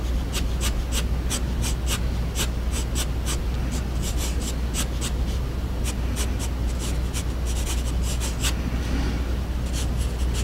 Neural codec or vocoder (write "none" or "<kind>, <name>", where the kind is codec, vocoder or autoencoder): none